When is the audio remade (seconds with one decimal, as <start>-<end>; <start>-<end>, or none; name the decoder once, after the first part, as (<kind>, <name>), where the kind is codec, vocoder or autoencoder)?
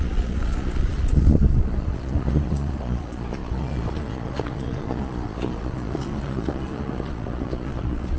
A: 0.0-8.2 (vocoder, Vocos)